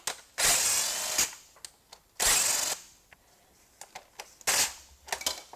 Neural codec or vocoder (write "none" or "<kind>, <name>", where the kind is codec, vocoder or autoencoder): none